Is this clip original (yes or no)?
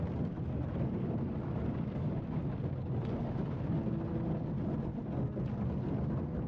yes